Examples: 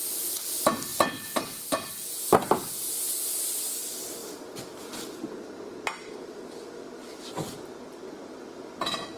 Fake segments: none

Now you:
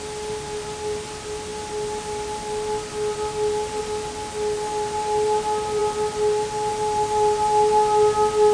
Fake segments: none

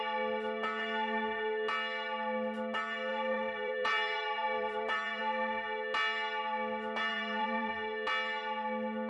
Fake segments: 3.1-5.2 (vocoder, BigVGAN v2); 7.1-7.7

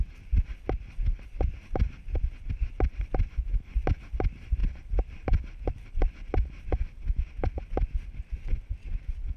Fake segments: 4.6-5.7 (vocoder, BigVGAN v2)

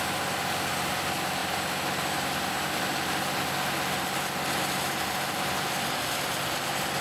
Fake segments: none

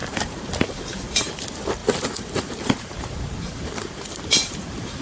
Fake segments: 0.0-5.0 (vocoder, BigVGAN v2)

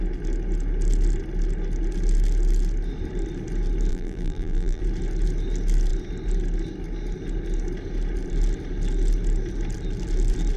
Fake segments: 3.9-4.8 (vocoder, BigVGAN v2)